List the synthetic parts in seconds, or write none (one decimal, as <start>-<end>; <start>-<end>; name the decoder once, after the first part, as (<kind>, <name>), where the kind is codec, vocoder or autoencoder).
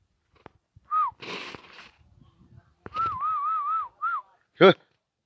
1.4-3.0 (vocoder, BigVGAN v2)